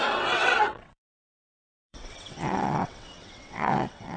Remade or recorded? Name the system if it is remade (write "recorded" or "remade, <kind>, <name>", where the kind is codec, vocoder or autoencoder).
remade, vocoder, WaveNeXt